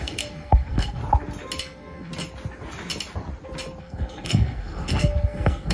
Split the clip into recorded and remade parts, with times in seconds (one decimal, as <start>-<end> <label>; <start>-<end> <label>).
0.0-1.0 remade; 1.0-1.6 recorded; 1.6-2.1 remade; 2.1-3.8 recorded; 3.8-5.7 remade